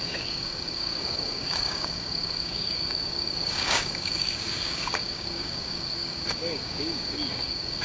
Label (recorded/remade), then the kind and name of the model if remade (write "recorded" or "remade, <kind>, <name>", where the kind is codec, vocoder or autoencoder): remade, codec, DAC